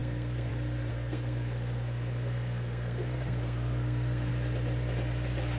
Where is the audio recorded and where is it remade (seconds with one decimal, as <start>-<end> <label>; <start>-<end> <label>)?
0.0-0.5 remade; 0.5-0.9 recorded; 0.9-4.3 remade; 4.3-5.6 recorded